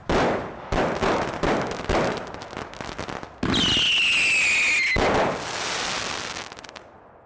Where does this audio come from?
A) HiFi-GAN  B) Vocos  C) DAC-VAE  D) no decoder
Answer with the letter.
D